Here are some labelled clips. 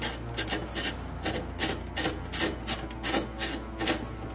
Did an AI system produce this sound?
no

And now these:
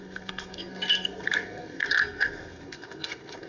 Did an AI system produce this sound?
yes